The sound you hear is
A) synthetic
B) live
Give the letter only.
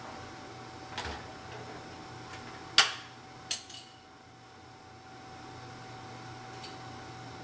B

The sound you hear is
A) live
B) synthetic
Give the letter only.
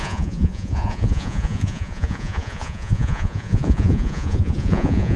B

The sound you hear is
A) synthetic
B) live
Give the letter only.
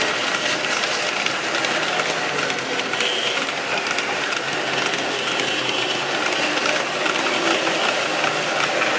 B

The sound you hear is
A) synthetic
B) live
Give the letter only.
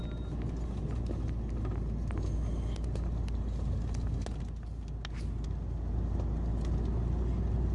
B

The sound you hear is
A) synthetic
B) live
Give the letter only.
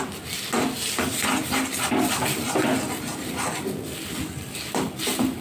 B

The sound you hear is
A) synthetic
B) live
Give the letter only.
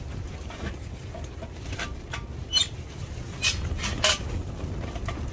B